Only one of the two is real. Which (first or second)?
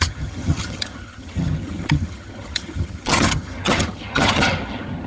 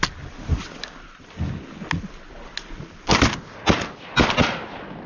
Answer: second